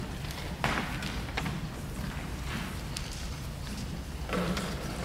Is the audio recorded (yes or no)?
yes